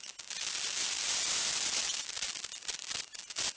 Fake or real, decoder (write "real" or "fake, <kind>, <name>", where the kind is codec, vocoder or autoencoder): real